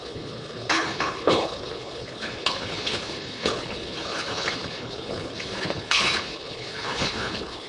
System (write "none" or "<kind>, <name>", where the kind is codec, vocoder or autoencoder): codec, HILCodec